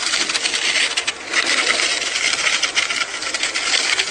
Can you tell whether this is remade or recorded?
recorded